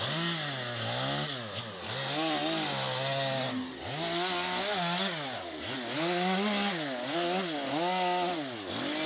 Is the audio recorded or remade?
recorded